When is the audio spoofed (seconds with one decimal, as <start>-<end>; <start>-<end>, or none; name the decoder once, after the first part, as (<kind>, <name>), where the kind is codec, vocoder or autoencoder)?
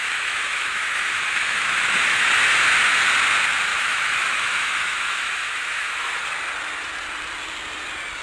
0.0-2.3 (autoencoder, DAC-VAE); 3.7-6.2